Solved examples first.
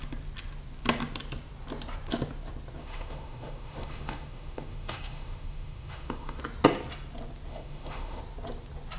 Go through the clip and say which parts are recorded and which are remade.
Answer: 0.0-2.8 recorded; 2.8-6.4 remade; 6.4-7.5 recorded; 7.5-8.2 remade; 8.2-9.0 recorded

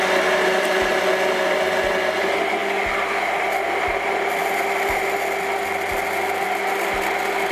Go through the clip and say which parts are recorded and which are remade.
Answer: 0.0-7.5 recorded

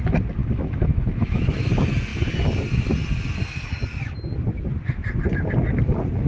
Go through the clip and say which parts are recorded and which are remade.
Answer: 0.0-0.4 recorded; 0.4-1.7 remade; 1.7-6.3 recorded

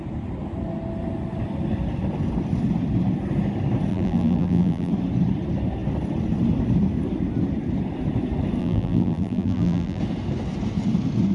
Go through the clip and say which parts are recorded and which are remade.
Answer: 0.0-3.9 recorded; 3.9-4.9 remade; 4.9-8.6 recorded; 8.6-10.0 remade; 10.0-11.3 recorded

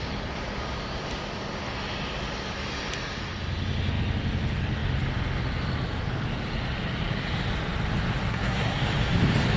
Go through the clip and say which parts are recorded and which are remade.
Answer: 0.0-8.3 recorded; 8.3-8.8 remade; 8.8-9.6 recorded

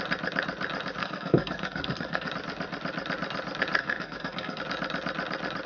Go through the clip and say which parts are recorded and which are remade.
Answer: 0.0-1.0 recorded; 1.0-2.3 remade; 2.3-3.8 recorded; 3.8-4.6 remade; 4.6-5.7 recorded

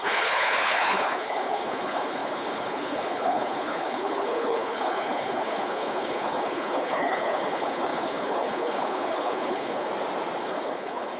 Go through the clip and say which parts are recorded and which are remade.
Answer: 0.0-9.9 remade; 9.9-10.4 recorded; 10.4-11.2 remade

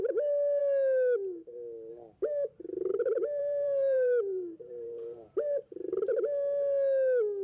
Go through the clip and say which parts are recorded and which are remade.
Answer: 0.0-2.9 recorded; 2.9-5.9 remade; 5.9-7.4 recorded